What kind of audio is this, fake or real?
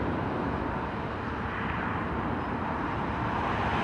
fake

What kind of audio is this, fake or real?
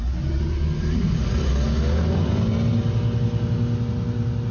real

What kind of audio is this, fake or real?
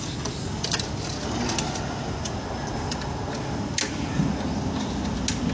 real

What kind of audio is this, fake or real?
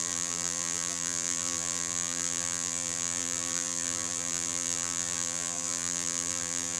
fake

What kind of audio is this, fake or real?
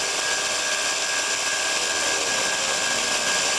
real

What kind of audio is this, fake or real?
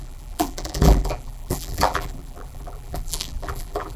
fake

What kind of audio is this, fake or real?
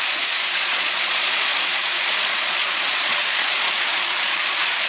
fake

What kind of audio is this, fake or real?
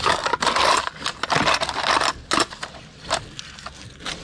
real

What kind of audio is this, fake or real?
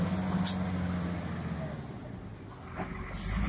real